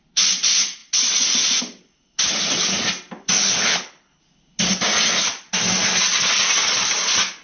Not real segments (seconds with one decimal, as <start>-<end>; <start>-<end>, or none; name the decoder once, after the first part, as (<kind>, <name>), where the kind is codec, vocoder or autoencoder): 3.4-4.2 (codec, HILCodec)